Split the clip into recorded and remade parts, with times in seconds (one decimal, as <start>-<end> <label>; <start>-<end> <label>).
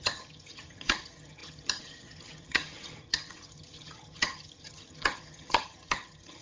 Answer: 0.0-6.4 remade